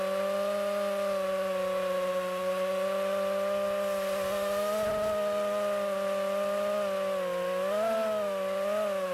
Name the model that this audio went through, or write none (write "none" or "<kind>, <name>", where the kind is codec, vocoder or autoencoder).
none